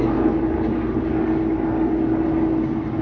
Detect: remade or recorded recorded